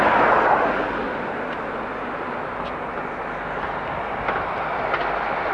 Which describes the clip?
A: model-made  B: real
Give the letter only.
B